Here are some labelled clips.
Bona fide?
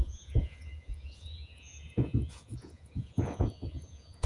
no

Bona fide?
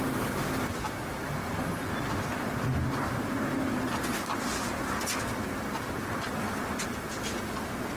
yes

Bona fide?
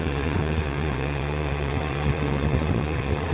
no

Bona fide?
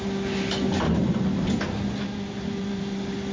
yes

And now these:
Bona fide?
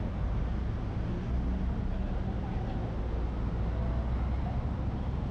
yes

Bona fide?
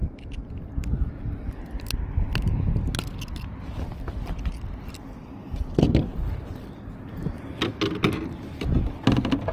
yes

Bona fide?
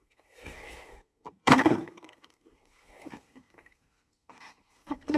no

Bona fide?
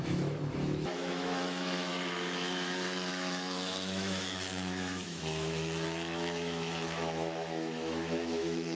no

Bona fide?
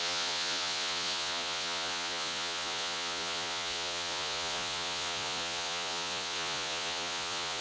no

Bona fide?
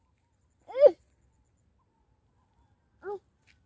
yes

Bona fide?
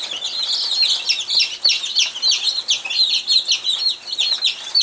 yes